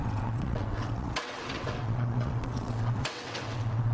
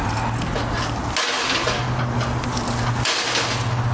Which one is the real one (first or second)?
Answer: second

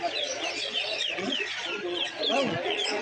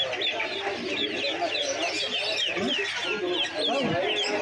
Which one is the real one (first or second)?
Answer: second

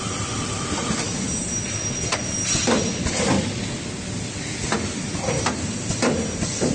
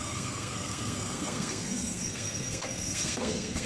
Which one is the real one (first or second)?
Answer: first